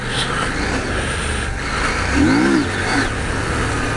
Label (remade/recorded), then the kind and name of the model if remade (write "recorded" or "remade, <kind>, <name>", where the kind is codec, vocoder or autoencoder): recorded